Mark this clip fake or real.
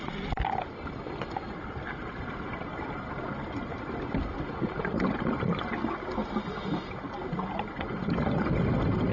fake